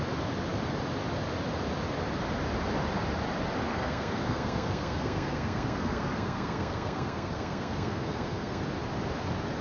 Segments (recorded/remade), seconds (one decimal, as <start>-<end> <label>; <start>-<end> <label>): 0.0-3.7 recorded; 3.7-8.6 remade; 8.6-9.6 recorded